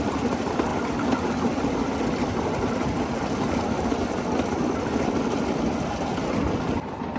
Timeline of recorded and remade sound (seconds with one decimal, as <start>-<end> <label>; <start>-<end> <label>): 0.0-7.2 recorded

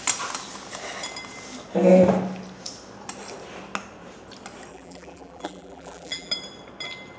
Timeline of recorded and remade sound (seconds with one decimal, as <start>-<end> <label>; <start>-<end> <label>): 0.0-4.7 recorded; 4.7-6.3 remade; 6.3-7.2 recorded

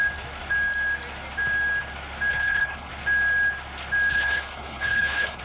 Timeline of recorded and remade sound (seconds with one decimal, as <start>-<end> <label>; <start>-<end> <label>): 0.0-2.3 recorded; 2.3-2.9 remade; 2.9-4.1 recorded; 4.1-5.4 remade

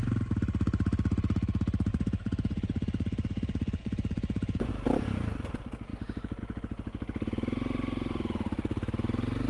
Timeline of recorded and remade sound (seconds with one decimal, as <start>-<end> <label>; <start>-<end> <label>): 0.0-1.9 recorded; 1.9-4.7 remade; 4.7-9.5 recorded

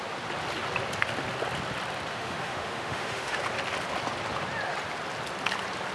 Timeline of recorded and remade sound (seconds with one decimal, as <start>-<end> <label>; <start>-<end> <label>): 0.0-2.1 recorded; 2.1-3.4 remade; 3.4-5.9 recorded